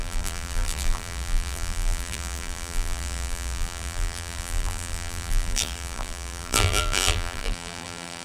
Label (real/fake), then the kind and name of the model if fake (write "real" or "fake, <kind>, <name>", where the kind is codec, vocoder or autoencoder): fake, vocoder, BigVGAN v2